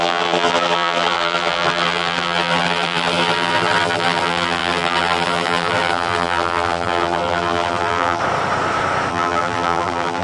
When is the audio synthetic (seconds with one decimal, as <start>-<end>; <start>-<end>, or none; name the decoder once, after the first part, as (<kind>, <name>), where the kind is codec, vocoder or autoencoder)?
0.0-8.2 (vocoder, BigVGAN v2); 9.1-10.2